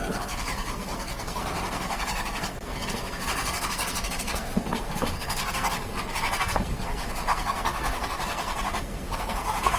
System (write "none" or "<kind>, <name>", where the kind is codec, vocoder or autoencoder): codec, SNAC